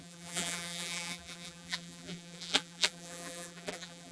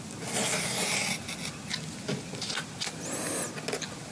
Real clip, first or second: second